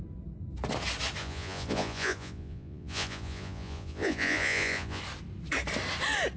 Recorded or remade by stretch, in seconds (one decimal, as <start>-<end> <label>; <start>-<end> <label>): 0.0-1.2 recorded; 1.2-5.0 remade; 5.0-6.4 recorded